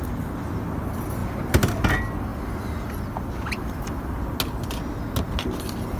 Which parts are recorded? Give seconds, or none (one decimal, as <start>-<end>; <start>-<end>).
0.0-2.3; 4.1-6.0